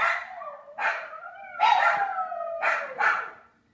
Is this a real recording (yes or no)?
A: yes